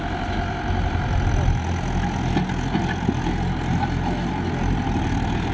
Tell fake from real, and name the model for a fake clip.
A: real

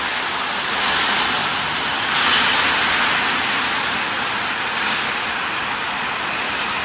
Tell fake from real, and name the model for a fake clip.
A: real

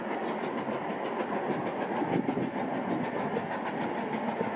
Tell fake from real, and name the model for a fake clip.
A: real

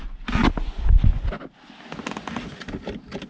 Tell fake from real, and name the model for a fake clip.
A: real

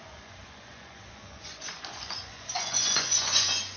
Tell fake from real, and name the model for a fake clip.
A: fake, vocoder, Vocos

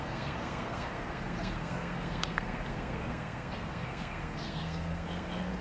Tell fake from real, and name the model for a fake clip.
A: fake, codec, SNAC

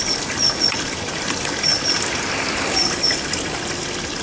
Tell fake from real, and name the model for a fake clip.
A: real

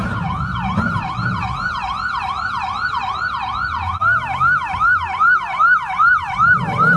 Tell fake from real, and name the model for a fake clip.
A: real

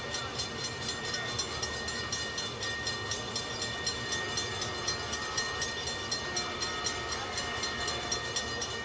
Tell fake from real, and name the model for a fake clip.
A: real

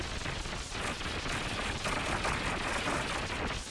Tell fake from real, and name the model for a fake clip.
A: real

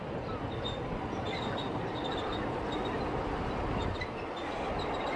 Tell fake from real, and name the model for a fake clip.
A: fake, vocoder, BigVGAN v2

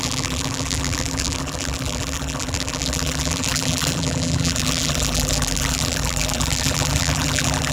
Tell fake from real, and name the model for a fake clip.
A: fake, vocoder, BigVGAN v2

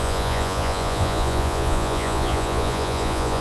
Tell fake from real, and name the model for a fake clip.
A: fake, vocoder, Vocos